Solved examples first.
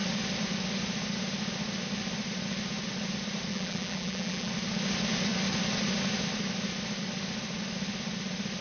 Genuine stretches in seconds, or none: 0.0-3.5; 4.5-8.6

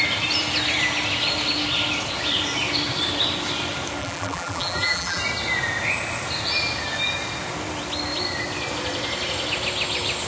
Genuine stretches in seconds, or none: 0.0-4.0; 5.2-10.3

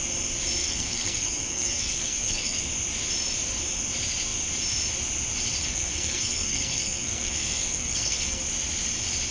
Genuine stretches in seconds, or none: 0.0-0.6; 2.6-5.6; 8.4-9.3

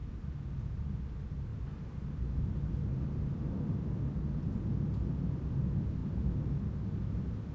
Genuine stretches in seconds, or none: 0.0-1.5; 3.5-7.5

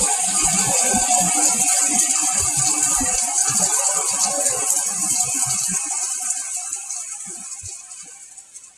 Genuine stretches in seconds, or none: 0.0-8.8